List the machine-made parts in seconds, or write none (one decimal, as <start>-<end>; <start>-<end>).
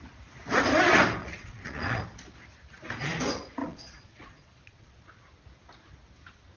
1.2-2.0; 3.6-5.0